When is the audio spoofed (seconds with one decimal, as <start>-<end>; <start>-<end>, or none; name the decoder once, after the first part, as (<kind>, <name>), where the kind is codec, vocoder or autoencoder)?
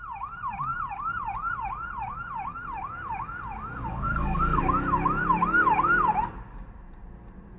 3.9-4.6 (codec, SNAC)